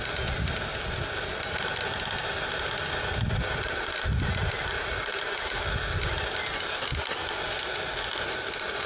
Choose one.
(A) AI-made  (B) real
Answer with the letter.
B